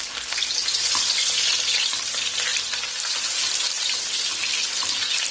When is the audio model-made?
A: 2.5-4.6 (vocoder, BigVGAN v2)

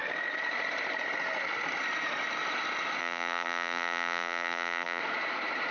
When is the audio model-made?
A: 3.0-5.0 (vocoder, BigVGAN v2)

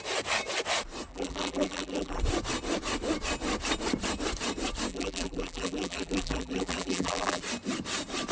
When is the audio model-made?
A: 1.1-2.2 (vocoder, BigVGAN v2); 4.9-7.4

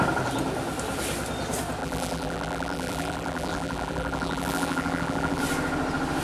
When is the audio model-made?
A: 1.8-5.4 (vocoder, BigVGAN v2)

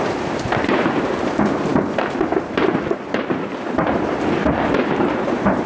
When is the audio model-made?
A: 0.0-5.7 (vocoder, BigVGAN v2)